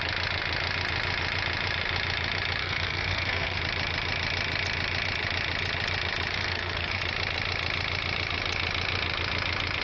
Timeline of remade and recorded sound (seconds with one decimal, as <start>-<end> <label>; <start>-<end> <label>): 0.0-2.6 recorded; 2.6-3.6 remade; 3.6-6.3 recorded; 6.3-7.0 remade; 7.0-9.8 recorded